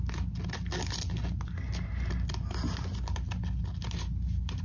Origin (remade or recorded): recorded